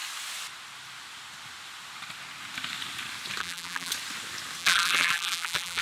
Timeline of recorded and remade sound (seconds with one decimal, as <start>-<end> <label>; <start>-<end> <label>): 0.0-3.4 recorded; 3.4-3.9 remade; 3.9-4.6 recorded; 4.6-5.8 remade